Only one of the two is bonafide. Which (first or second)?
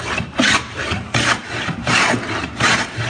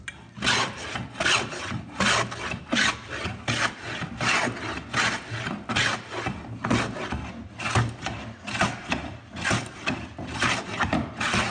second